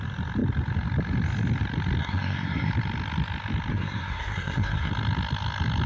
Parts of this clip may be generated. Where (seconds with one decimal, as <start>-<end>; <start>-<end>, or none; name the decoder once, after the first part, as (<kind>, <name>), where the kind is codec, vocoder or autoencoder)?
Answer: 2.0-2.7 (codec, SNAC); 3.7-4.9